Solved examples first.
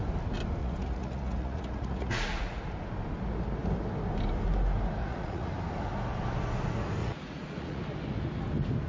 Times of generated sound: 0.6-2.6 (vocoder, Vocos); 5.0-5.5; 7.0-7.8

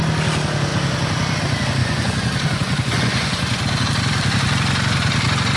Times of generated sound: 1.8-3.6 (vocoder, Vocos)

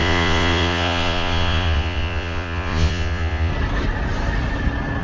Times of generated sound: 0.0-3.5 (vocoder, Vocos)

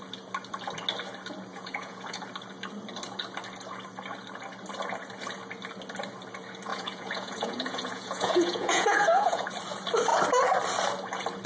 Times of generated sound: 1.5-2.2 (vocoder, Vocos); 6.7-9.5

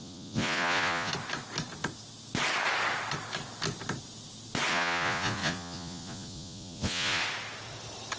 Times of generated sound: 0.0-1.1 (vocoder, Vocos); 4.7-7.2

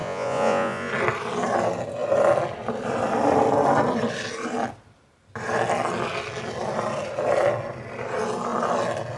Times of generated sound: 0.0-0.9 (vocoder, Vocos)

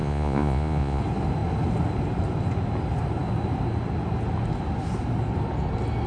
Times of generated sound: 0.0-1.0 (vocoder, Vocos)